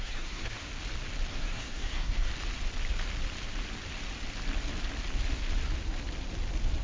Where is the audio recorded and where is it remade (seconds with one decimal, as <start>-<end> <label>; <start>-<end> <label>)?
0.0-0.7 remade; 0.7-1.3 recorded; 1.3-2.3 remade; 2.3-6.8 recorded